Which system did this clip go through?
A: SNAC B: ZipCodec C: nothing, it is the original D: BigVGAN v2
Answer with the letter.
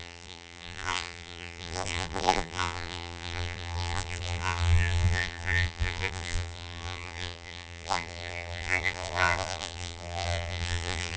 D